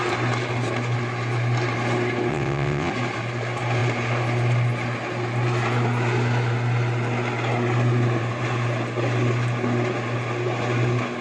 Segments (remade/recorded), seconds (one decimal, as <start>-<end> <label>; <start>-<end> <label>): 0.0-2.3 recorded; 2.3-2.9 remade; 2.9-11.2 recorded